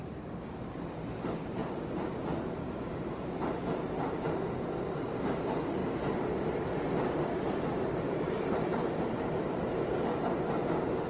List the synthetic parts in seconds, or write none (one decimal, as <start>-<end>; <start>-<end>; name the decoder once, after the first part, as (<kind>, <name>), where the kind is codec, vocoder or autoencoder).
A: 0.0-1.6 (vocoder, BigVGAN v2); 2.4-4.0; 5.0-5.8; 7.6-11.1